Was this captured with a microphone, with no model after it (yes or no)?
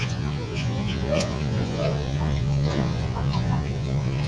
no